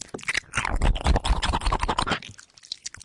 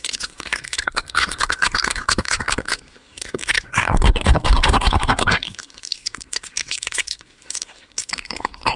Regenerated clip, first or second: second